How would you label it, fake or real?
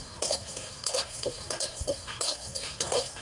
fake